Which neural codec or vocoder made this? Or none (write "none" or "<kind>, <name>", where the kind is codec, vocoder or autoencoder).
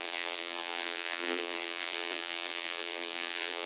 vocoder, BigVGAN v2